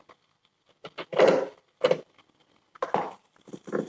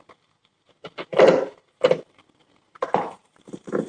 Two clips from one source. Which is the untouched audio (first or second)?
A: first